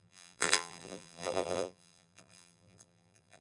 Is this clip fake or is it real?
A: fake